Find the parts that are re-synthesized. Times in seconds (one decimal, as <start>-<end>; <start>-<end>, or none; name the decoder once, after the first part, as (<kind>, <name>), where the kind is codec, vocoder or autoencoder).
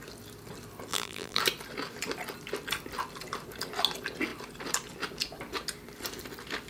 0.9-1.4 (vocoder, BigVGAN v2)